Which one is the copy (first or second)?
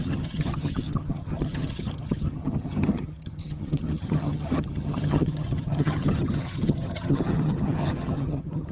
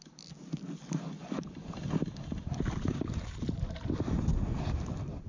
first